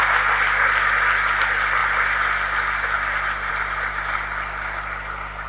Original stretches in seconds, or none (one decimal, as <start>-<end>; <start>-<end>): 0.0-5.5